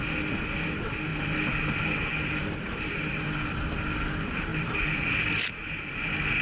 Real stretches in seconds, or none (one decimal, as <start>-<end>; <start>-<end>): 0.0-6.4